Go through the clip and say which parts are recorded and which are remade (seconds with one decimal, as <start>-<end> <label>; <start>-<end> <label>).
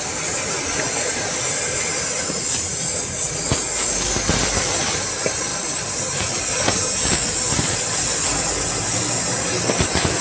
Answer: 0.0-10.2 recorded